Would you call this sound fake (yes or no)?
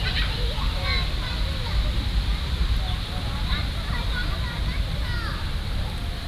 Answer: no